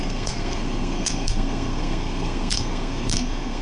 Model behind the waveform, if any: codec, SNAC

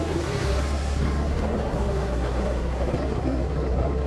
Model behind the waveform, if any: codec, SNAC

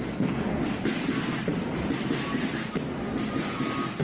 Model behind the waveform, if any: none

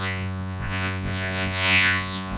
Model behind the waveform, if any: vocoder, Vocos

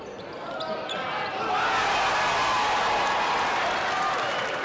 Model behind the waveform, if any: none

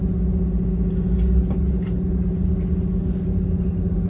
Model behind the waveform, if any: none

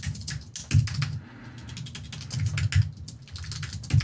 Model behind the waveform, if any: none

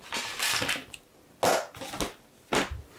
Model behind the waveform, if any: none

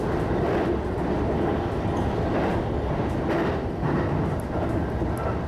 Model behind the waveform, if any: none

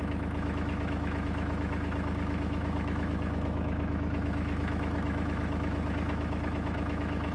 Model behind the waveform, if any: autoencoder, DAC-VAE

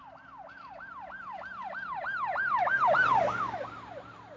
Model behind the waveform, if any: none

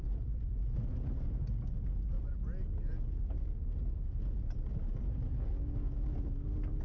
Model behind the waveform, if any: none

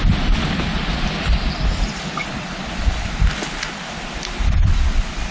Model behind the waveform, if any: vocoder, BigVGAN v2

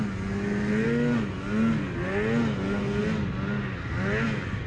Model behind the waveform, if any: none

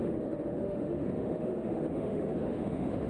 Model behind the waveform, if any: autoencoder, DAC-VAE